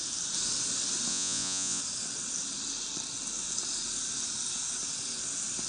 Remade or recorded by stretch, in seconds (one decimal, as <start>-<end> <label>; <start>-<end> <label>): 0.0-1.1 recorded; 1.1-1.8 remade; 1.8-5.7 recorded